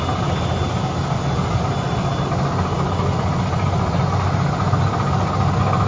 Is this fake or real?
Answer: real